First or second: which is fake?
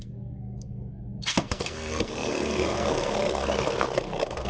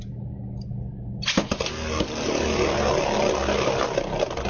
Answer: first